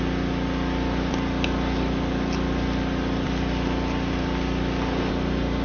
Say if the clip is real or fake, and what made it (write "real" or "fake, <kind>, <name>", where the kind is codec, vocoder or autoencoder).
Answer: real